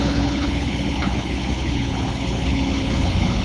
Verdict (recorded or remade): remade